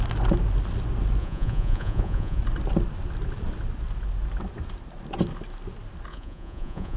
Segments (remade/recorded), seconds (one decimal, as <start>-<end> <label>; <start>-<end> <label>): 0.0-1.2 recorded; 1.2-2.4 remade; 2.4-6.1 recorded; 6.1-7.0 remade